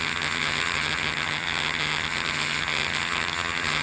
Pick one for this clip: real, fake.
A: fake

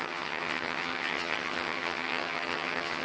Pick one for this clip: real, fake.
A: fake